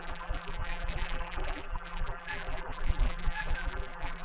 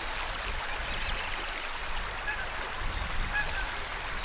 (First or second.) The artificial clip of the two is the first